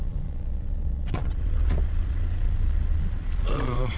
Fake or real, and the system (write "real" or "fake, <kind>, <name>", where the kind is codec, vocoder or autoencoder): fake, vocoder, Vocos